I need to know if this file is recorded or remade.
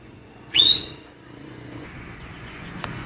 remade